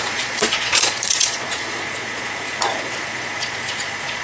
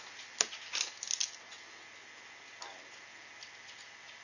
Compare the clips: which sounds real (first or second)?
second